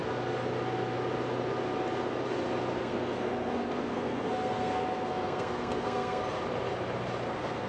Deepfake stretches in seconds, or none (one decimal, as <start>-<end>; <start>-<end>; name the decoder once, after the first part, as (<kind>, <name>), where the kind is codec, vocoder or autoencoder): 2.8-6.2 (codec, SNAC); 7.3-7.7